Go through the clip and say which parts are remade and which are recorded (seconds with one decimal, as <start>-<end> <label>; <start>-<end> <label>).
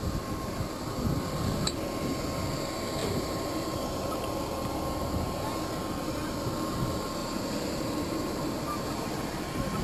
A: 0.0-3.0 recorded; 3.0-4.1 remade; 4.1-7.2 recorded; 7.2-9.8 remade